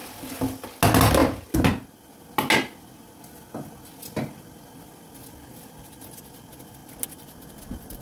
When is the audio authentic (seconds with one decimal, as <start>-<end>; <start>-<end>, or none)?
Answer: 0.0-8.0